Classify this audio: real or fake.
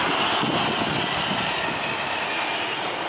real